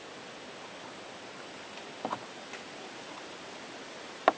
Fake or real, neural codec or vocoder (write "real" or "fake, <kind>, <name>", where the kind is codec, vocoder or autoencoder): real